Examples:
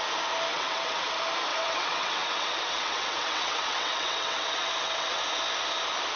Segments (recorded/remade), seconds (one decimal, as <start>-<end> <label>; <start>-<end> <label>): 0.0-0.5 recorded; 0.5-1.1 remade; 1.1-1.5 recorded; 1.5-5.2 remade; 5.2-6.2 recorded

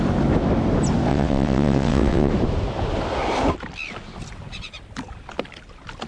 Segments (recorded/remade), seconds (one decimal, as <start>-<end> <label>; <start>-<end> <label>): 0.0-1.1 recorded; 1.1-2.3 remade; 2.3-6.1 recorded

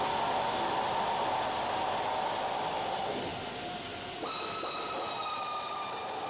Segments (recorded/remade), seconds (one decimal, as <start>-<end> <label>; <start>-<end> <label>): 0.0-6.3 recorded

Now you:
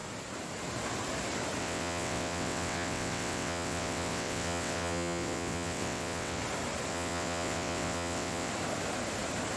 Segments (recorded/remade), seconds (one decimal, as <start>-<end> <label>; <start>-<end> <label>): 0.0-1.6 recorded; 1.6-6.4 remade; 6.4-6.9 recorded; 6.9-8.5 remade; 8.5-9.6 recorded